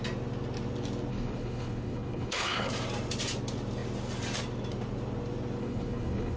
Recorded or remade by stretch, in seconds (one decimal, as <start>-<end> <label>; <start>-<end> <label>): 0.0-1.1 recorded; 1.1-2.7 remade; 2.7-5.6 recorded; 5.6-6.4 remade